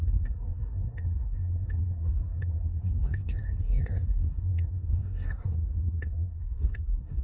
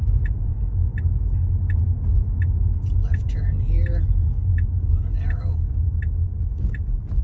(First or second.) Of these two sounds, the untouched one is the second